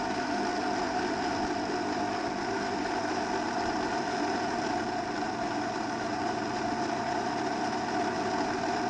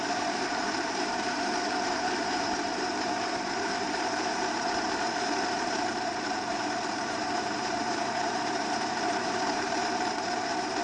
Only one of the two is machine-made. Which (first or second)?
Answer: second